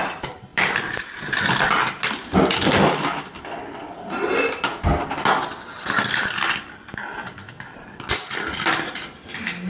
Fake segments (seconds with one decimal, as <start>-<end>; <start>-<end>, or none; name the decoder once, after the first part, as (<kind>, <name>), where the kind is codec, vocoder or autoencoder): 0.5-2.9 (vocoder, BigVGAN v2)

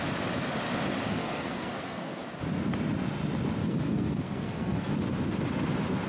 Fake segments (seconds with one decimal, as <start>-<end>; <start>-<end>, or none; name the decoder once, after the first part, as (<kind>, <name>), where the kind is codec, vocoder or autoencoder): 1.2-2.2 (codec, SNAC); 3.6-4.9

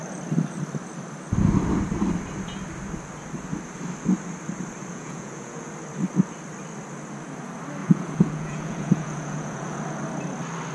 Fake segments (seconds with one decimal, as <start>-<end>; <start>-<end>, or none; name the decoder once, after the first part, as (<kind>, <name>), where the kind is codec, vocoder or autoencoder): 4.9-5.7 (vocoder, Vocos); 7.8-9.8

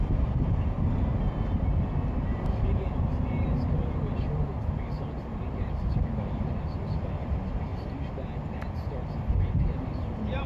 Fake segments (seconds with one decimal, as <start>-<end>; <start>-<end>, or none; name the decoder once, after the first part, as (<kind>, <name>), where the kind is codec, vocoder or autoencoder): 2.3-2.9 (vocoder, BigVGAN v2)

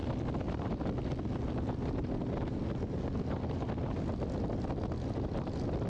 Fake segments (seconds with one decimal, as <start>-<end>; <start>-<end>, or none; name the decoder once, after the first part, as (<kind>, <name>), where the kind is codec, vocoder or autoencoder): none

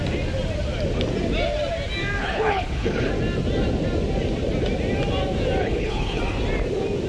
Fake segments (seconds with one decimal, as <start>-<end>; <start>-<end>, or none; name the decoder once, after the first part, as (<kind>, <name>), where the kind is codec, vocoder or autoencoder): 2.2-3.1 (codec, HILCodec); 5.6-6.2

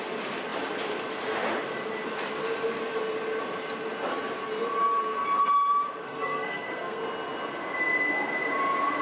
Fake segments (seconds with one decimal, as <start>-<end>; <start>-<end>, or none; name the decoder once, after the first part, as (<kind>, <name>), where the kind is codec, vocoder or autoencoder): 6.0-7.0 (codec, SNAC)